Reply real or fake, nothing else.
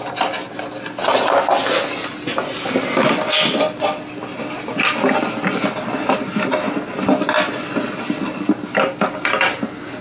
real